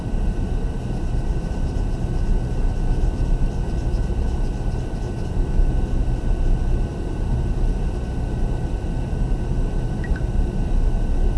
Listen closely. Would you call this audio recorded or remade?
recorded